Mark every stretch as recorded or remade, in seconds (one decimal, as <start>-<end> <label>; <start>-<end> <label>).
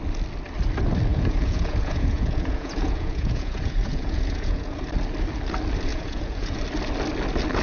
0.0-1.1 recorded; 1.1-4.8 remade; 4.8-5.9 recorded; 5.9-6.6 remade; 6.6-7.6 recorded